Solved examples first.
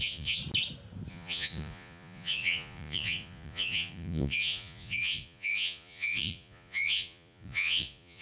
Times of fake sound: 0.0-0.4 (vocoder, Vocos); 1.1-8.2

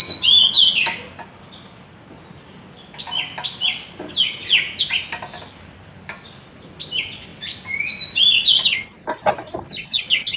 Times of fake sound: none

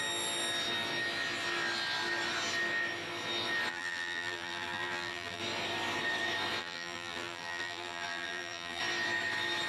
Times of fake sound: 3.7-5.4 (vocoder, BigVGAN v2); 6.6-8.8

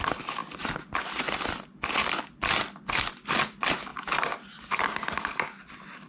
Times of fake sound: none

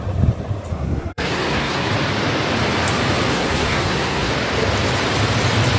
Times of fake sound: 0.7-1.9 (codec, SNAC); 3.3-4.3

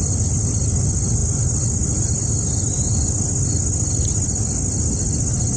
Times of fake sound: none